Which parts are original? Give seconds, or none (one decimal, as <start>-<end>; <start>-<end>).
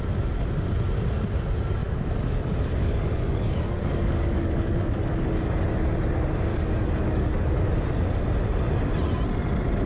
0.0-1.8; 5.5-6.5; 7.7-9.9